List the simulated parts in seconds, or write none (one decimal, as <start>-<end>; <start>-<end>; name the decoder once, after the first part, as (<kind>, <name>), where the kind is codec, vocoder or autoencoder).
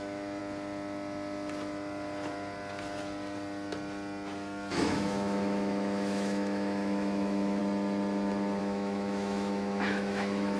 0.0-0.4 (autoencoder, DAC-VAE); 4.7-7.6; 8.6-10.6